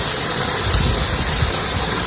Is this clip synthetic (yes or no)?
no